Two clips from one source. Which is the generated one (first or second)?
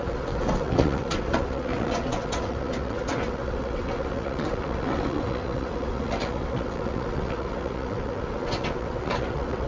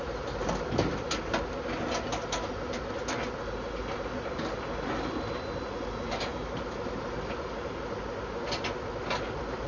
first